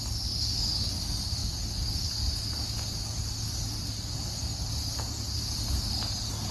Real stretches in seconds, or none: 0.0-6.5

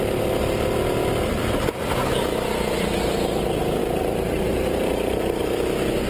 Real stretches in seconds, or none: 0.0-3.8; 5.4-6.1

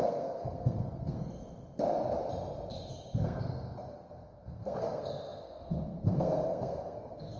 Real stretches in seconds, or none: 1.4-3.2

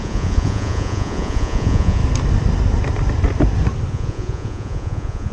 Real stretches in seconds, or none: 2.0-3.9

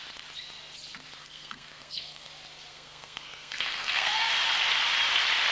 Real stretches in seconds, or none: 0.0-1.2; 2.3-2.7; 4.3-5.5

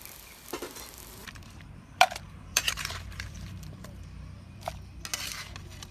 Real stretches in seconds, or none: 0.0-1.2; 4.7-5.9